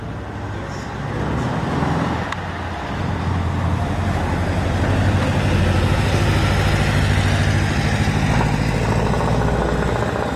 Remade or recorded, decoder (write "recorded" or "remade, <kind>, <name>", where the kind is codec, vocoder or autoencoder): recorded